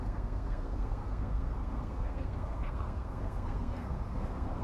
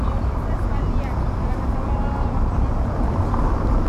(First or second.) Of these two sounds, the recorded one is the second